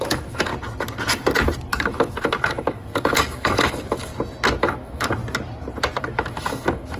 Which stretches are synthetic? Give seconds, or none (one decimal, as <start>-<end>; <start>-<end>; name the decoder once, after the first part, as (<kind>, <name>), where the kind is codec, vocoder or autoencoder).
0.0-0.5 (autoencoder, DAC-VAE); 1.7-4.1; 4.6-5.2; 6.0-7.0